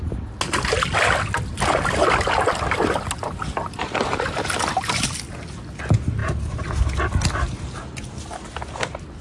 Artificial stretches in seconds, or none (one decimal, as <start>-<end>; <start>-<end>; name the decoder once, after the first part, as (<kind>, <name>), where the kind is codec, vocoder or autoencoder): none